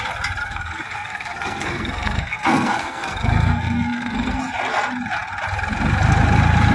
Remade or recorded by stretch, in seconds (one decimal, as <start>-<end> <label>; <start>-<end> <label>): 0.0-0.4 recorded; 0.4-4.4 remade; 4.4-6.7 recorded